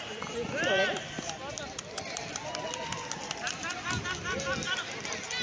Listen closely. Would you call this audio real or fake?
real